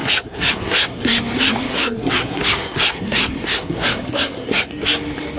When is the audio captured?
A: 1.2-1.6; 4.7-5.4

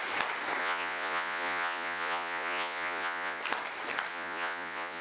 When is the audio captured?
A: 0.0-0.6; 3.4-4.1

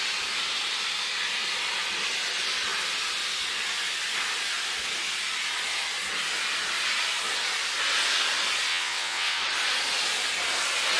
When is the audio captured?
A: 0.0-8.7; 9.4-11.0

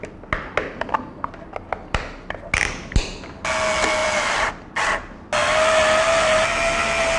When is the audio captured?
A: 0.0-4.0; 4.5-7.2

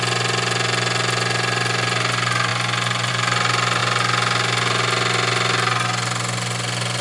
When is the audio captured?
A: 0.0-7.0

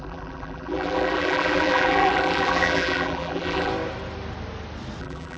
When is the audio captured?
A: 3.7-5.0

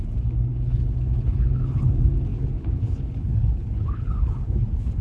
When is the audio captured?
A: 0.0-0.5; 1.9-2.3